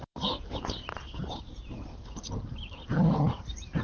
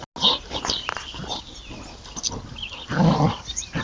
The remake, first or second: first